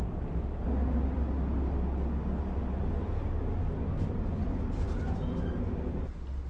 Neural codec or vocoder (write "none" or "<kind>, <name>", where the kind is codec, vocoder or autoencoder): none